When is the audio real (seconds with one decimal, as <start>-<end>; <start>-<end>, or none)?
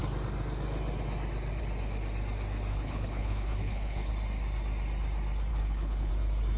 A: 0.0-2.7; 4.1-5.5; 6.1-6.6